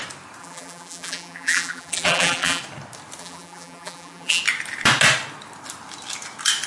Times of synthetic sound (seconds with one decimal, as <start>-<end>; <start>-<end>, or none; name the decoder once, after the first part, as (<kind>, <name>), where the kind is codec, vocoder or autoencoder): 0.4-2.6 (vocoder, BigVGAN v2); 3.2-4.4